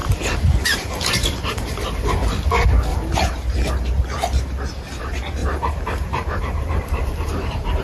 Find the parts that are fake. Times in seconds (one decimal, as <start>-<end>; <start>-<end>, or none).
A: 0.0-2.3; 2.9-3.7; 5.4-7.8